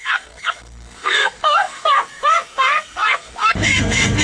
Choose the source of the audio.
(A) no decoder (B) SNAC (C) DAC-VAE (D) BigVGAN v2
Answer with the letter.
B